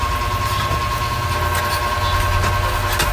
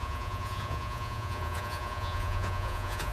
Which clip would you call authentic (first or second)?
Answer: first